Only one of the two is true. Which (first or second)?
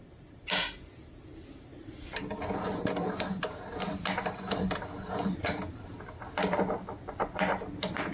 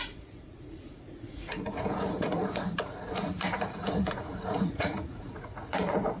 first